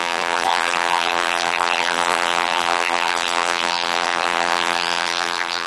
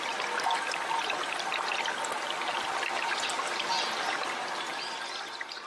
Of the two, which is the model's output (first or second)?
first